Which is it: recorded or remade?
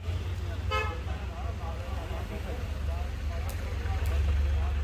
recorded